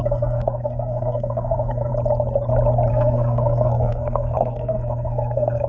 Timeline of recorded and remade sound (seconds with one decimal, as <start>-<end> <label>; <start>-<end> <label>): 0.0-1.9 remade; 1.9-2.9 recorded; 2.9-5.7 remade